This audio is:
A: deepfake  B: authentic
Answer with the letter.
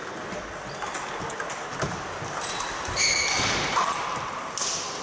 B